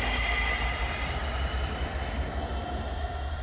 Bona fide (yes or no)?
yes